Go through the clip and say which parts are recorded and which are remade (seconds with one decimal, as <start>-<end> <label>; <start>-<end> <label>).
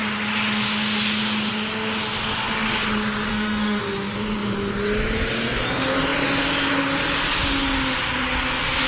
0.0-3.3 recorded; 3.3-3.8 remade; 3.8-8.9 recorded